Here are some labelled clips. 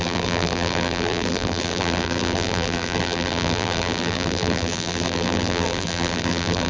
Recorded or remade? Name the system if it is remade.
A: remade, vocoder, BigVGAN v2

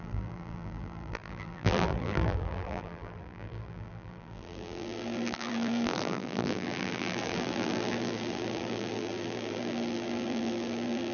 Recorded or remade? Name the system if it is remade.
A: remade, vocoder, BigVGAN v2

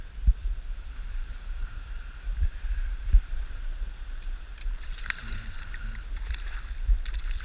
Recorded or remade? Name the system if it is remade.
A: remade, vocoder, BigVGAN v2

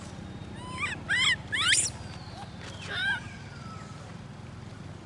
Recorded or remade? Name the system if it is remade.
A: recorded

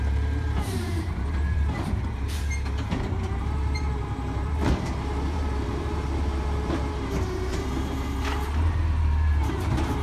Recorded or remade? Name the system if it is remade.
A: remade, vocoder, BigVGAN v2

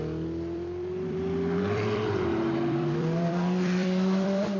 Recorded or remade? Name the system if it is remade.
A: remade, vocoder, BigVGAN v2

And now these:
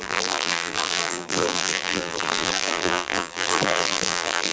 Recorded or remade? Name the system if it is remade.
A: remade, vocoder, BigVGAN v2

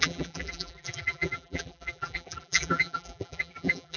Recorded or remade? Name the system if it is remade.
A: remade, vocoder, BigVGAN v2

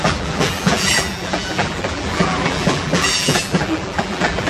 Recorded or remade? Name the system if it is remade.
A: remade, vocoder, BigVGAN v2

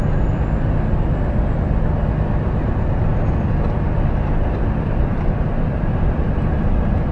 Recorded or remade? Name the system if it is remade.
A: recorded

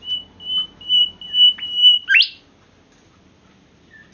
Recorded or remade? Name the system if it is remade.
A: recorded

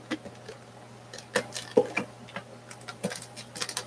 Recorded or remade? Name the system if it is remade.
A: recorded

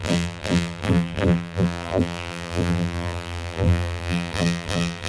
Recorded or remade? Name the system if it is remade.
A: remade, vocoder, BigVGAN v2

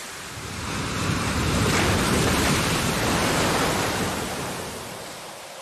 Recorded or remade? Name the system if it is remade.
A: remade, vocoder, BigVGAN v2